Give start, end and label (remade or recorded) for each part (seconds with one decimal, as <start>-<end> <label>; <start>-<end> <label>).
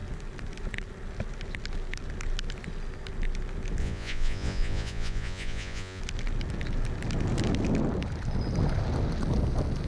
0.0-3.8 recorded; 3.8-6.0 remade; 6.0-9.9 recorded